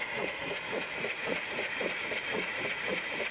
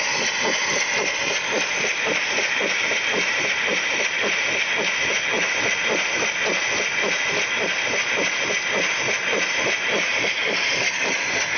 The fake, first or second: first